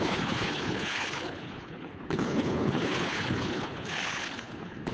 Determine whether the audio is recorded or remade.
remade